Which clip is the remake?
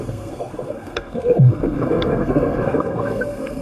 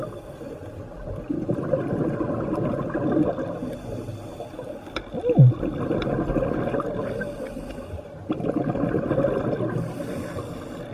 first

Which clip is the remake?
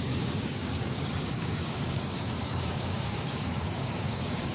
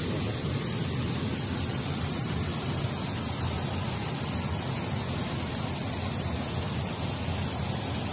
first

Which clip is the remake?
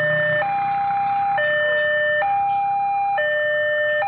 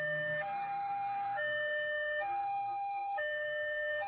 second